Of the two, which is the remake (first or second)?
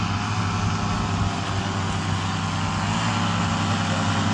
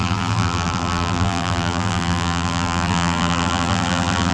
second